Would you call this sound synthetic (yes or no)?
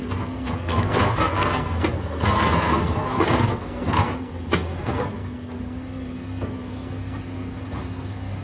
yes